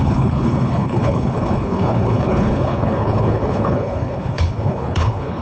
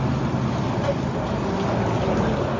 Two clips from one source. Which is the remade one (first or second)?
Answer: first